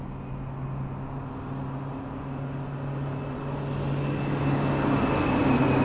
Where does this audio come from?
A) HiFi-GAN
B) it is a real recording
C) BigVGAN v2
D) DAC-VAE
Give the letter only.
B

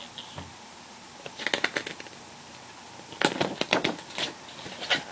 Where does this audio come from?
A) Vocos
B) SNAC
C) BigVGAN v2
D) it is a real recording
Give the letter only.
D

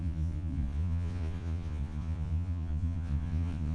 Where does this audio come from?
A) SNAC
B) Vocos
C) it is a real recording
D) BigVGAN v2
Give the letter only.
B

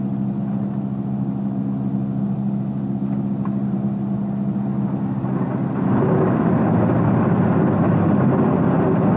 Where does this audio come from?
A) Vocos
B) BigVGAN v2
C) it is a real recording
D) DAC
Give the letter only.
C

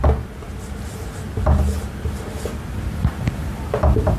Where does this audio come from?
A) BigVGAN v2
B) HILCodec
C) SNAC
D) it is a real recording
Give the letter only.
A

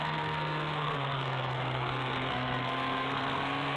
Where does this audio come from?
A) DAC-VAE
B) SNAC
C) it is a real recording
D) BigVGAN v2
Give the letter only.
B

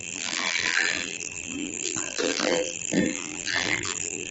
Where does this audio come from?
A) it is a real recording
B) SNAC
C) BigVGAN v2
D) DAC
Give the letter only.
C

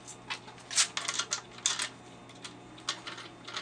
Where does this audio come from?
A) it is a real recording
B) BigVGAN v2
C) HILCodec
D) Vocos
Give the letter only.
A